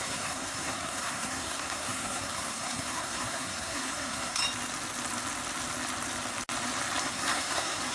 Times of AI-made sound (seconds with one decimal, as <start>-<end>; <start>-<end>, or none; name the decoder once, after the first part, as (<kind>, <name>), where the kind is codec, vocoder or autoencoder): 0.0-4.4 (codec, SNAC); 7.0-7.9